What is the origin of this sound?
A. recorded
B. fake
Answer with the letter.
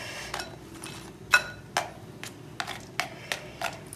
A